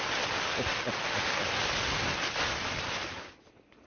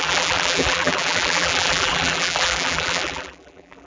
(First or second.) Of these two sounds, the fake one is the second